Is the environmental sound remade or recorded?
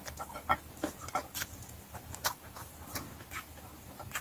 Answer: recorded